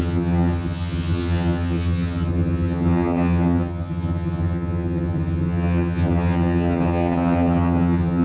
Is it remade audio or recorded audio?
remade